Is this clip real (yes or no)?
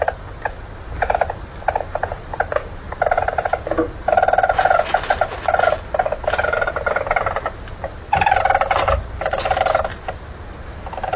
yes